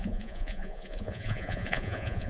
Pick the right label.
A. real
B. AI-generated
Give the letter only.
B